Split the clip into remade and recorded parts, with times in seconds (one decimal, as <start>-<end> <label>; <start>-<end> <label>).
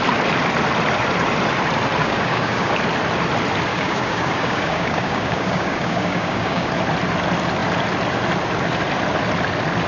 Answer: 0.0-2.0 recorded; 2.0-2.7 remade; 2.7-3.7 recorded; 3.7-6.7 remade; 6.7-9.9 recorded